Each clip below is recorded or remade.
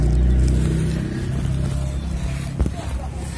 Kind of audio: recorded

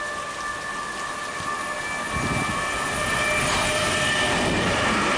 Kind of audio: recorded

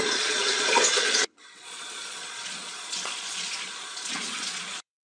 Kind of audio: remade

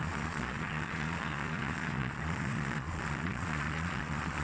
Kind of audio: remade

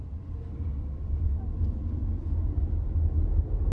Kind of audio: recorded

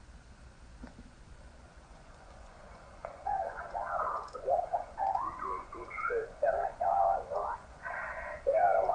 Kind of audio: remade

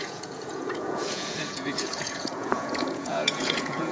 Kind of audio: remade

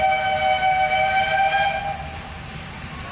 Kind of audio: recorded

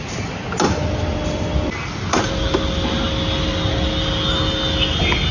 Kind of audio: recorded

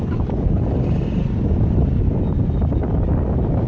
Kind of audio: recorded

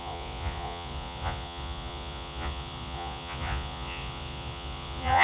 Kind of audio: remade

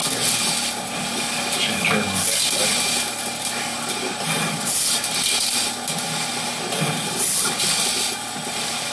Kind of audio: recorded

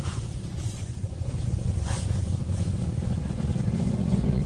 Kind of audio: remade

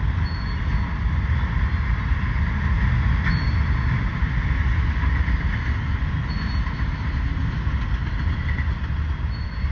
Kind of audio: recorded